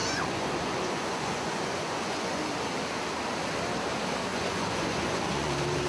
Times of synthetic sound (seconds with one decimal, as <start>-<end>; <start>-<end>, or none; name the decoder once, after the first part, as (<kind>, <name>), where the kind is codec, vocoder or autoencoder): 0.0-2.4 (vocoder, Vocos); 4.3-5.5